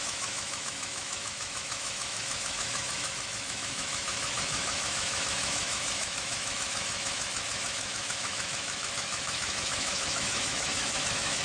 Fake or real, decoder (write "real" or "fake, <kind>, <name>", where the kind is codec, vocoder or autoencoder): fake, autoencoder, DAC-VAE